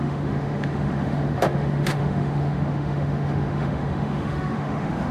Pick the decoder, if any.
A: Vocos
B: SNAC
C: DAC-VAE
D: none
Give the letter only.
C